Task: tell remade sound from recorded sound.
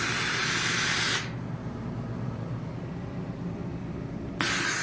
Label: recorded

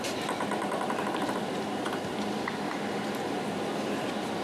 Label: remade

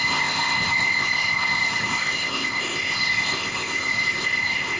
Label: remade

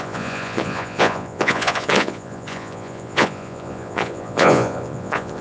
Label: remade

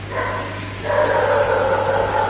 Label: recorded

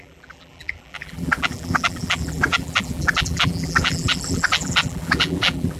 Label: remade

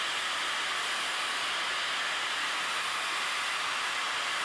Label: recorded